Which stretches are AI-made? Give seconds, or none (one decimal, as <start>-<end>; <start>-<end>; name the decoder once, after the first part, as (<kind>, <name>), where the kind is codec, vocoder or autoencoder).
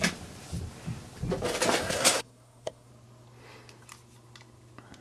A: 1.8-2.9 (codec, SNAC)